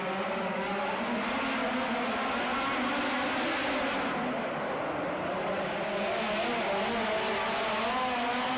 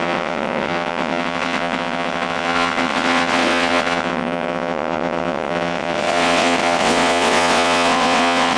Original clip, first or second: first